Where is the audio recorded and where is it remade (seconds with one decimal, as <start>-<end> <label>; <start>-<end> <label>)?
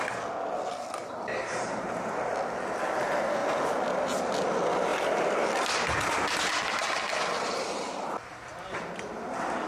0.0-1.0 recorded; 1.0-2.3 remade; 2.3-9.7 recorded